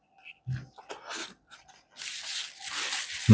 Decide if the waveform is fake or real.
real